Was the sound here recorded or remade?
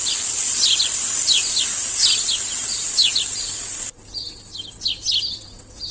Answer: recorded